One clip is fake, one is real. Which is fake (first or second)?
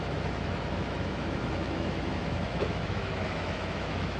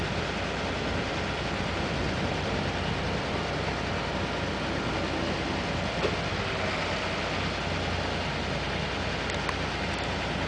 first